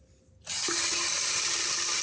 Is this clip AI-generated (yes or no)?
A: no